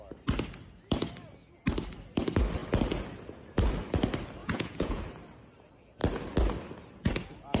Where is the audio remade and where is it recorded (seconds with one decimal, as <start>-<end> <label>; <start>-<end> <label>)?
0.0-4.4 recorded; 4.4-5.0 remade; 5.0-7.6 recorded

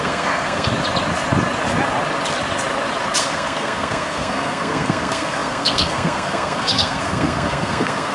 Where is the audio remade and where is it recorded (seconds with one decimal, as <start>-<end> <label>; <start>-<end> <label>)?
0.0-0.7 remade; 0.7-3.2 recorded; 3.2-8.1 remade

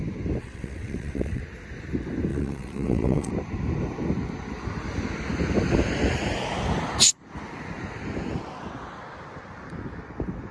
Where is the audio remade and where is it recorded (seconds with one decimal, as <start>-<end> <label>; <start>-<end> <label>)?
0.0-0.4 recorded; 0.4-1.4 remade; 1.4-2.3 recorded; 2.3-3.3 remade; 3.3-10.5 recorded

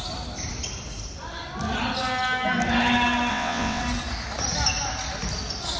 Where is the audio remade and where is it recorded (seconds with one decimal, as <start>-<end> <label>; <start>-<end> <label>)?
0.0-3.3 recorded; 3.3-3.8 remade; 3.8-5.8 recorded

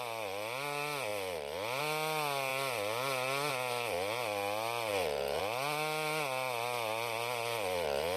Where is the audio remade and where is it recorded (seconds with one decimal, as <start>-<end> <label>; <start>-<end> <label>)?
0.0-4.9 recorded; 4.9-5.4 remade; 5.4-8.2 recorded